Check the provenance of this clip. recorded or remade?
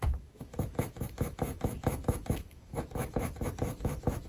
remade